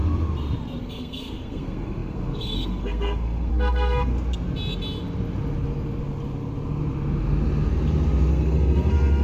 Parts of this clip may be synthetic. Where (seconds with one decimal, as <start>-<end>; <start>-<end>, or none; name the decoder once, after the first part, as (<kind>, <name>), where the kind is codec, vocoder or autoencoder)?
0.8-4.1 (codec, SNAC); 8.3-9.2